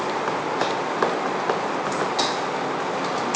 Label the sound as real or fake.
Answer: real